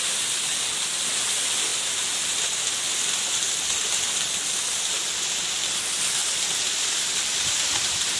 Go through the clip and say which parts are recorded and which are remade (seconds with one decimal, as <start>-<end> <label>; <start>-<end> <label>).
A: 0.0-8.2 recorded